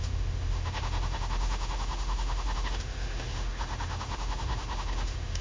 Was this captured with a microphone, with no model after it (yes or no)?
no